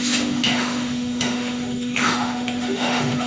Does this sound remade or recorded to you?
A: remade